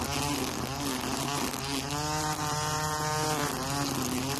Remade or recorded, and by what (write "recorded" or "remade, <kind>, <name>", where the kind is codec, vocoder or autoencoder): recorded